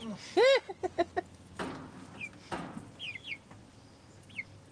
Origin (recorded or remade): recorded